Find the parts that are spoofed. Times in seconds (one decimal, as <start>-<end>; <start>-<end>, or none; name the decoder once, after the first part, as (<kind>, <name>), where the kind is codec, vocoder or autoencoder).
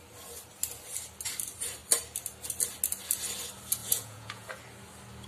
3.8-4.5 (vocoder, Vocos)